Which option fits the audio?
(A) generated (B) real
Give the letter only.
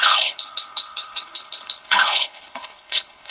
A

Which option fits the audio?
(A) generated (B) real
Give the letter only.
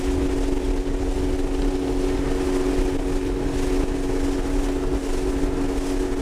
B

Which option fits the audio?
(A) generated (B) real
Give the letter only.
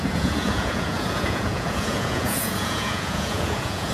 A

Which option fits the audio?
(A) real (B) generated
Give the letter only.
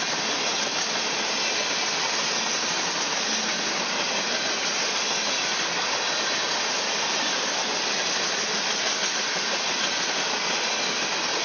A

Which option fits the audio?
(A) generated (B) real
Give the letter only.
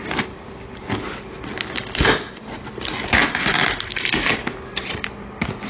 B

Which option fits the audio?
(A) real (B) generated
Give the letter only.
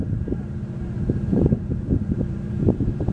B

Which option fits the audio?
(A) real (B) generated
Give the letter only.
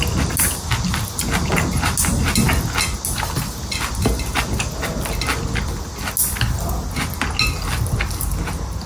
A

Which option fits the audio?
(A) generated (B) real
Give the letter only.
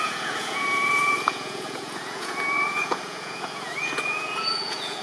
A